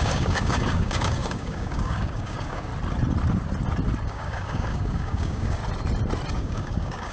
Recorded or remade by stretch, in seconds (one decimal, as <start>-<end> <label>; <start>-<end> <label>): 0.0-2.7 remade; 2.7-4.1 recorded; 4.1-5.6 remade; 5.6-6.3 recorded; 6.3-7.1 remade

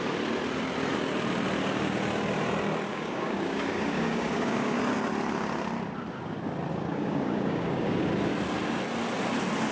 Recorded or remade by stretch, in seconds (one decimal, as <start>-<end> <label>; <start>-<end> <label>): 0.0-2.9 recorded; 2.9-4.8 remade; 4.8-6.7 recorded; 6.7-8.1 remade; 8.1-9.7 recorded

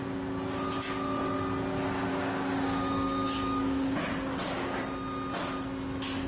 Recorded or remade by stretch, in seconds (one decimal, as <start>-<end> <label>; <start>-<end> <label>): 0.0-2.1 recorded; 2.1-4.0 remade; 4.0-6.3 recorded

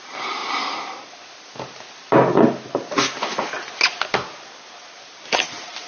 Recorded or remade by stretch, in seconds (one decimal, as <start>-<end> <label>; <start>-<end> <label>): 0.0-5.9 recorded

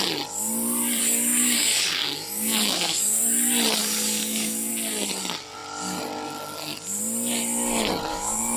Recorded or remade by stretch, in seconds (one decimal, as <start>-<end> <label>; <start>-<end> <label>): 0.0-1.0 recorded; 1.0-3.2 remade; 3.2-3.8 recorded; 3.8-4.7 remade; 4.7-8.1 recorded; 8.1-8.6 remade

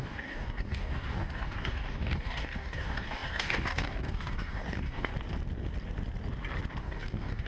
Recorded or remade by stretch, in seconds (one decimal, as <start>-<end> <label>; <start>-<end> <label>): 0.0-5.1 remade; 5.1-6.8 recorded; 6.8-7.5 remade

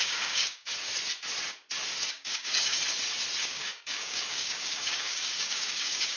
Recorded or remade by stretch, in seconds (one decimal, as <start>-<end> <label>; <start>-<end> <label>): 0.0-0.7 remade; 0.7-2.1 recorded; 2.1-2.8 remade; 2.8-3.4 recorded; 3.4-6.2 remade

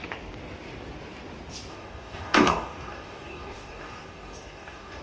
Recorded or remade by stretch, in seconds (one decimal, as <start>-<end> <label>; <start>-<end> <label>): 0.0-1.7 recorded; 1.7-5.0 remade